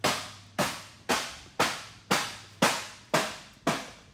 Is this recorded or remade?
recorded